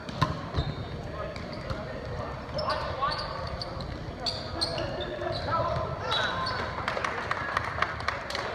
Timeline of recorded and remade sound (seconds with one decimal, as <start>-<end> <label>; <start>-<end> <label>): 0.0-8.5 recorded